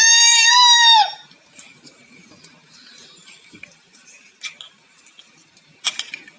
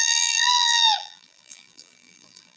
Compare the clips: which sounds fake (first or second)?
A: second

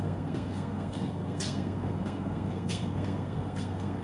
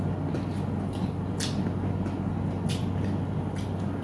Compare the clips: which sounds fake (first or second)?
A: first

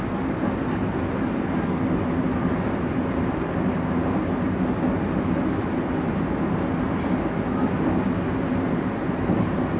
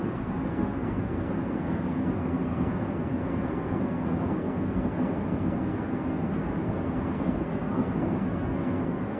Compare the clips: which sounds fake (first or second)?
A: second